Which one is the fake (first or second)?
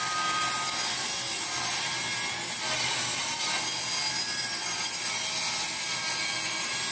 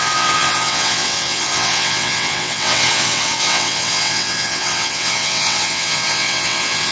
second